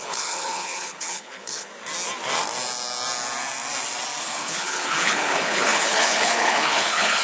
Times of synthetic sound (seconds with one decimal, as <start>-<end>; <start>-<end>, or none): 0.0-1.7; 4.2-7.2